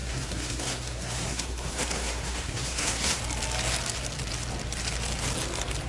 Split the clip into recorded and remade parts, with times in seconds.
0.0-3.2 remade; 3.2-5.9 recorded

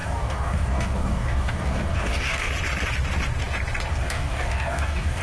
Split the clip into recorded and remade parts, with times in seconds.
0.0-2.5 remade; 2.5-3.9 recorded; 3.9-5.2 remade

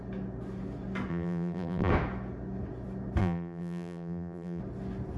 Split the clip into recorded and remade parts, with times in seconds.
0.0-1.1 recorded; 1.1-1.9 remade; 1.9-3.2 recorded; 3.2-4.6 remade; 4.6-5.2 recorded